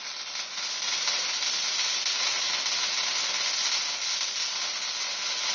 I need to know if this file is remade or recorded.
recorded